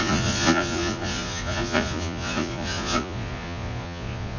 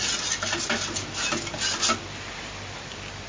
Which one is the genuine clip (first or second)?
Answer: second